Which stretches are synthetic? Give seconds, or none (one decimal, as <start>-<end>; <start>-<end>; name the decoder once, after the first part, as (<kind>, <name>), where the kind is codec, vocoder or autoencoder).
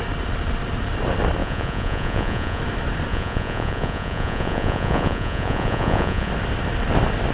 1.4-2.6 (vocoder, Vocos); 3.1-6.3